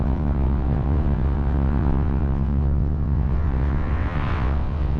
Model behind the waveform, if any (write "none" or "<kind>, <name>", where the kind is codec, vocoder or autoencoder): vocoder, WaveNeXt